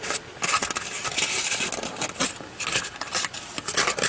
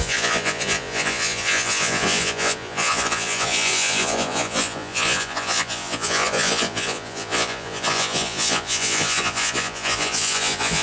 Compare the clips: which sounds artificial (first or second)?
second